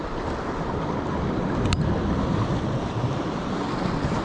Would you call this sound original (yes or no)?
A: yes